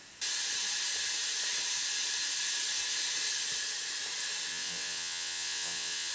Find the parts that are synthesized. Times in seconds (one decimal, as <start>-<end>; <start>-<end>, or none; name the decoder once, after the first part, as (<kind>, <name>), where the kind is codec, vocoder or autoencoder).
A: 4.5-6.1 (vocoder, WaveNeXt)